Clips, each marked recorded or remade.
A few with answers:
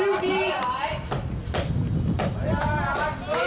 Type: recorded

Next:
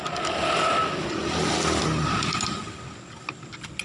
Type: recorded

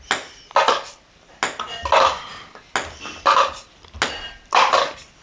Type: recorded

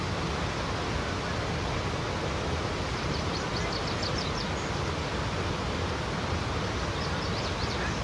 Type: recorded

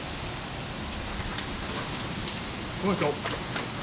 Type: recorded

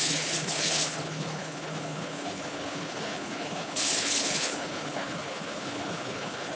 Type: remade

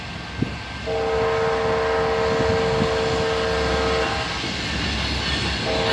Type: recorded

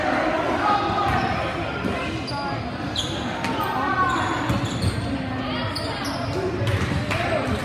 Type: recorded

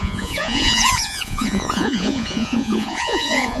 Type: remade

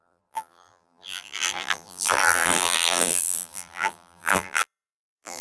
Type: remade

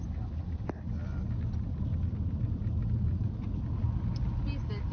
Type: recorded